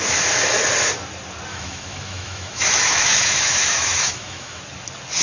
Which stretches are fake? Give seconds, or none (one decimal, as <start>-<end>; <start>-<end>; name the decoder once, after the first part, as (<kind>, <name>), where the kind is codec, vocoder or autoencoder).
1.5-4.6 (autoencoder, DAC-VAE)